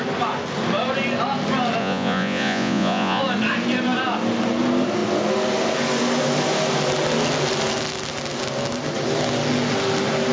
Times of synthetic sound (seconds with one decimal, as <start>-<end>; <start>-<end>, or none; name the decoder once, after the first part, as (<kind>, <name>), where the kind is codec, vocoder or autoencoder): 1.8-3.2 (vocoder, Vocos)